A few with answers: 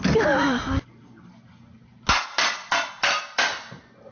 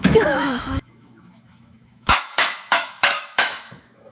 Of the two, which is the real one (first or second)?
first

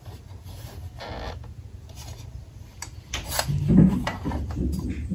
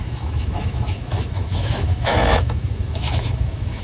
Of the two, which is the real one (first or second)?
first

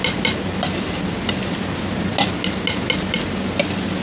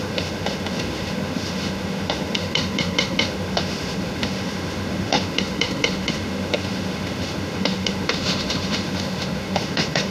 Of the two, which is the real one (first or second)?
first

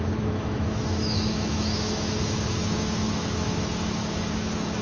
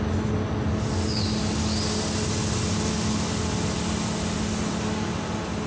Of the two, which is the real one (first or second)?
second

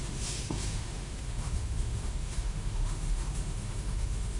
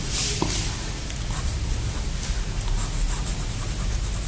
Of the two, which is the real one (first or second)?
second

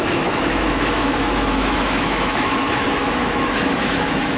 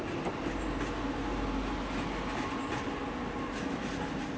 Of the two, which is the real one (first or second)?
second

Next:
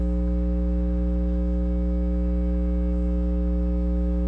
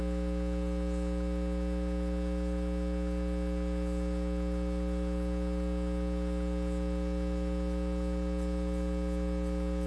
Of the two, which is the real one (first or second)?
second